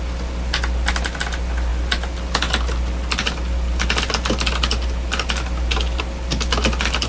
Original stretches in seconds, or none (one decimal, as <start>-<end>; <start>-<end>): 0.0-7.1